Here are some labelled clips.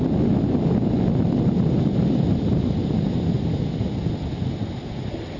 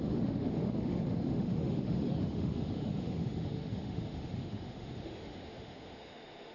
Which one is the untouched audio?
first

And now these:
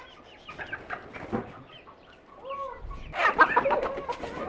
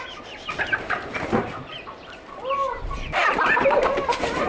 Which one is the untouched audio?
first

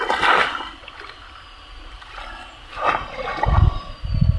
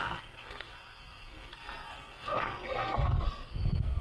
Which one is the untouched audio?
first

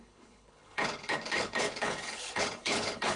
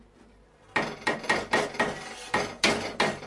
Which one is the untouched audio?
second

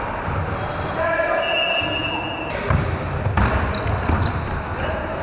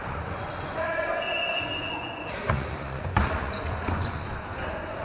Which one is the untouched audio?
first